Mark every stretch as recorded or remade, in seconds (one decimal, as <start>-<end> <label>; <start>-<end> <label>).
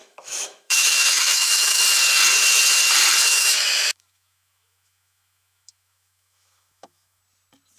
0.0-1.8 remade; 1.8-3.3 recorded; 3.3-7.2 remade; 7.2-7.8 recorded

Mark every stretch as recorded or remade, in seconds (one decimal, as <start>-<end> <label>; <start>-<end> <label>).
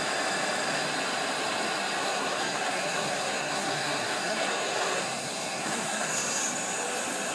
0.0-2.0 recorded; 2.0-6.4 remade; 6.4-7.3 recorded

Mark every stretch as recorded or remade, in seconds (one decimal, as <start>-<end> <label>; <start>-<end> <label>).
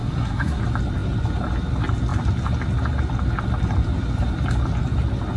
0.0-0.6 remade; 0.6-5.4 recorded